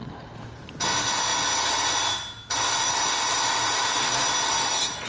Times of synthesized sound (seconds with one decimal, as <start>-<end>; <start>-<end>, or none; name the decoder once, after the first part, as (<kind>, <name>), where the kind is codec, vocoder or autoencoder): 0.0-0.7 (vocoder, BigVGAN v2)